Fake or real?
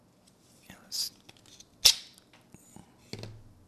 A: real